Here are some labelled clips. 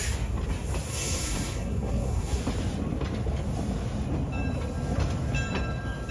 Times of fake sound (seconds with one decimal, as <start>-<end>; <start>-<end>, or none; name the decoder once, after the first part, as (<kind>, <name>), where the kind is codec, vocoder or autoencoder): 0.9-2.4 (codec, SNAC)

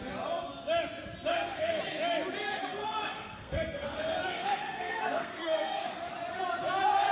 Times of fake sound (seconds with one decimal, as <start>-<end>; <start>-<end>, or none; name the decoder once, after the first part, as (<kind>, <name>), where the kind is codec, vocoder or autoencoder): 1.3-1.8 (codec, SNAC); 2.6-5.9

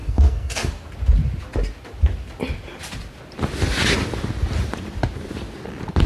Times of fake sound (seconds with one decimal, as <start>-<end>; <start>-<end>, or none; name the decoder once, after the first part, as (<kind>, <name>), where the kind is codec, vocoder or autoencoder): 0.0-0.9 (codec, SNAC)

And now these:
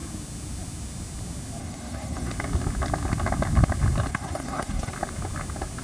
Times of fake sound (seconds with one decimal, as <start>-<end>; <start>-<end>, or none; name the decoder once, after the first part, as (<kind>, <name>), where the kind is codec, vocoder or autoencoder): 1.6-2.3 (codec, SNAC); 4.1-4.9

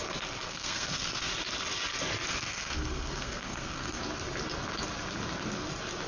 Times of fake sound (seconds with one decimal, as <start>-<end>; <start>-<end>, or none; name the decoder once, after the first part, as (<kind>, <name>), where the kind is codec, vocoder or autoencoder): 0.5-1.3 (codec, SNAC); 2.3-4.0

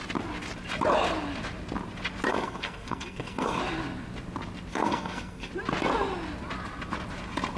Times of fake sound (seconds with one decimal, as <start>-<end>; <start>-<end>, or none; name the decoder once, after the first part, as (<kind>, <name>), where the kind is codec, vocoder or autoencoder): 2.3-3.6 (codec, SNAC); 4.7-5.5

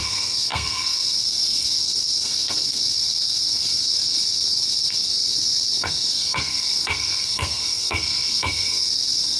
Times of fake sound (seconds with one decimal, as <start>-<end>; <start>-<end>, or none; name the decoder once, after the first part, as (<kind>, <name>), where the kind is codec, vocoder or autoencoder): 0.0-9.4 (codec, SNAC)